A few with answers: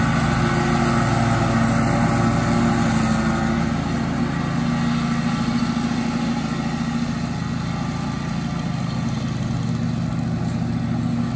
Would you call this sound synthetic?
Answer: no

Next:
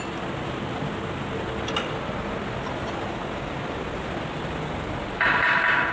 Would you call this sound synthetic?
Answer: no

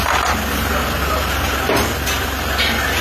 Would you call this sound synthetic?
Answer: no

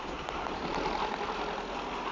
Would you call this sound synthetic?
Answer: no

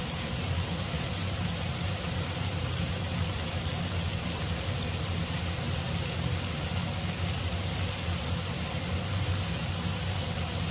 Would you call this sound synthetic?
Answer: no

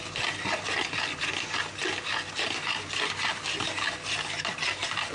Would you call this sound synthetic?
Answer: no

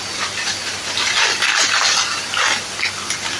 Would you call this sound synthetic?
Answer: no